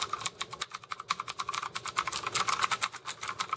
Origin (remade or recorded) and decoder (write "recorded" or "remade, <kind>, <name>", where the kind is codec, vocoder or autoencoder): recorded